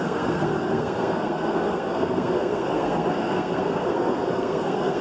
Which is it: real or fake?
fake